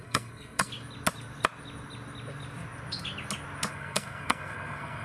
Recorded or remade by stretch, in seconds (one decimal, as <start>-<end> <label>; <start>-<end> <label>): 0.0-0.7 remade; 0.7-3.7 recorded; 3.7-5.0 remade